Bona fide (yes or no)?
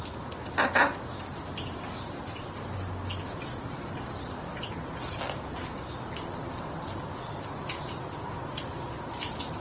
yes